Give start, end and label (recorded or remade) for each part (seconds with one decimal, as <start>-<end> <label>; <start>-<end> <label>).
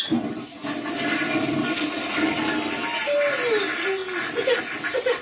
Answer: 0.0-5.2 recorded